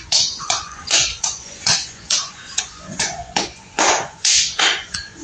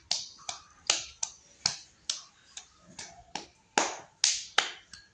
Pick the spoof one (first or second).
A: first